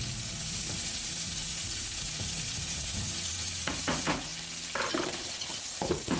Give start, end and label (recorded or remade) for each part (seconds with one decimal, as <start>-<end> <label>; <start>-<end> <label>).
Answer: 0.0-4.3 remade; 4.3-5.1 recorded; 5.1-6.2 remade